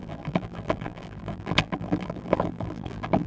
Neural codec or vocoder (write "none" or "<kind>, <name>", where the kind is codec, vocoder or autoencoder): vocoder, BigVGAN v2